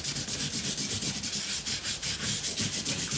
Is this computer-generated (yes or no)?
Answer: no